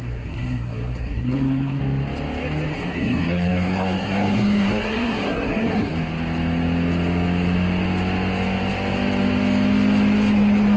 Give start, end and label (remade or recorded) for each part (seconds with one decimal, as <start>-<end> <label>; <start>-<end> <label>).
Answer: 0.0-1.8 remade; 1.8-2.7 recorded; 2.7-5.9 remade; 5.9-10.8 recorded